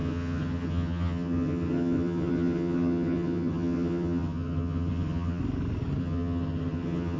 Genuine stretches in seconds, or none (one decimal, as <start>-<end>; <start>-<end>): 5.4-6.0